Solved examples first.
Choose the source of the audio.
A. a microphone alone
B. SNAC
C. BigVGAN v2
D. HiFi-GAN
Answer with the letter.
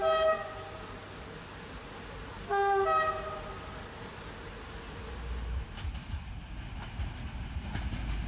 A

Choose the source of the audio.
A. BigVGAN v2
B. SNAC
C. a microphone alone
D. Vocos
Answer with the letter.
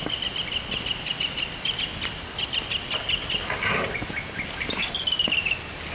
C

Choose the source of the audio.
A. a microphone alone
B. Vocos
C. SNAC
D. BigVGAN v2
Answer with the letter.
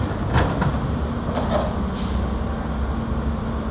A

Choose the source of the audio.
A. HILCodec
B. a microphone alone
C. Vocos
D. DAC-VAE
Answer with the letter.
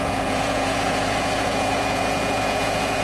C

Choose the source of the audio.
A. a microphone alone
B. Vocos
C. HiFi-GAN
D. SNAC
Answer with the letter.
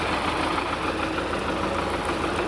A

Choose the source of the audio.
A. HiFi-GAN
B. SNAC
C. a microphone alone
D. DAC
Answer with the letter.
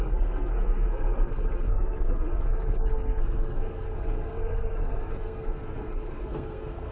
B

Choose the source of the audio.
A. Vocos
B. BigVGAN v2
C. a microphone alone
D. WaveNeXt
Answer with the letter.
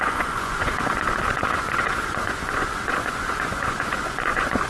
A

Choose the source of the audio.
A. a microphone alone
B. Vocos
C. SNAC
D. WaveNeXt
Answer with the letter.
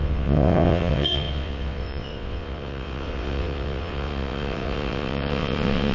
D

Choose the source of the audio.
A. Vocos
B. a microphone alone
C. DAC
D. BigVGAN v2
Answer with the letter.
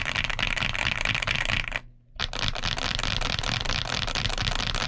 B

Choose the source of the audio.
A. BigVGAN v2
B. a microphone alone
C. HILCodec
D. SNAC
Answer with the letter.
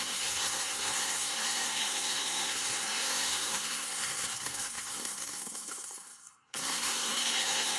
D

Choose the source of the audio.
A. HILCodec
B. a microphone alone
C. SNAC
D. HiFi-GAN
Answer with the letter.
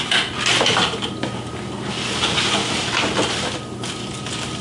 B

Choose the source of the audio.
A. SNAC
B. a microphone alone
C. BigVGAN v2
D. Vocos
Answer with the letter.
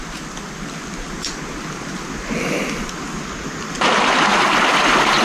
B